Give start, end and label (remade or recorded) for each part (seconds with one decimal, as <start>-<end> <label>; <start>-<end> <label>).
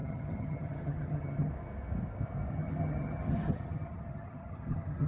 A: 0.0-1.5 remade; 1.5-2.5 recorded; 2.5-5.1 remade